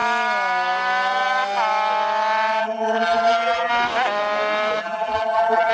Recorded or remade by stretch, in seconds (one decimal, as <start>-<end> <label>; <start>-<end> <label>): 0.0-2.6 recorded; 2.6-3.7 remade; 3.7-4.8 recorded; 4.8-5.7 remade